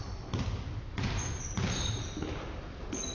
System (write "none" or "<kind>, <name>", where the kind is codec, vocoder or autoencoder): none